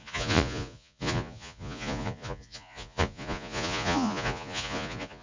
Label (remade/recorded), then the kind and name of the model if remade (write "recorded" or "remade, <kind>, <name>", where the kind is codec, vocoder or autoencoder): remade, vocoder, Vocos